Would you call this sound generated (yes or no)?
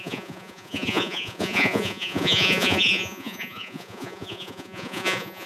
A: yes